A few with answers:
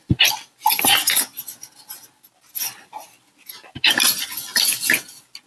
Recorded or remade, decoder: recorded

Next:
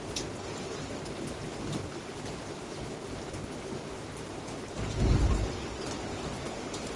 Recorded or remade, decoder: remade, vocoder, BigVGAN v2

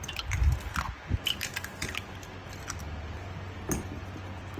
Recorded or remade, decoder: recorded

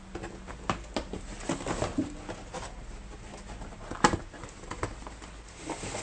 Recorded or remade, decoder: recorded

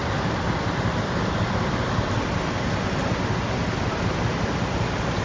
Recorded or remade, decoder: remade, vocoder, BigVGAN v2